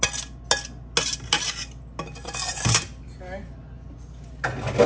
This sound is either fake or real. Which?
real